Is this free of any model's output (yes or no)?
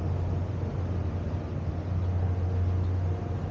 yes